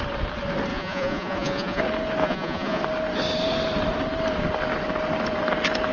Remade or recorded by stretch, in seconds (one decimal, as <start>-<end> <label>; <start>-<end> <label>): 0.0-0.7 recorded; 0.7-1.8 remade; 1.8-2.2 recorded; 2.2-2.8 remade; 2.8-5.9 recorded